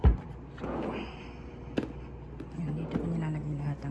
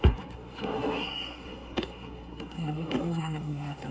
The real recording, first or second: first